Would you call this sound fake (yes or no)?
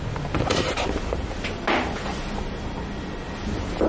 no